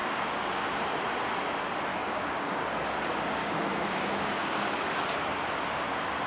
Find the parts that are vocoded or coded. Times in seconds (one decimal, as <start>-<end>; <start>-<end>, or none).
0.0-0.8; 1.9-2.6; 3.4-4.7